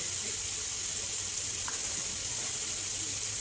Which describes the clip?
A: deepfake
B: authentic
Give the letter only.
B